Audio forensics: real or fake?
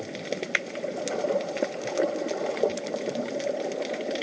real